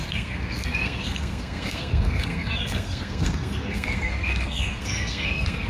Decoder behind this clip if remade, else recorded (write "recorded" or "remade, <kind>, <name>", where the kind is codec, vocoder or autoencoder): remade, codec, SNAC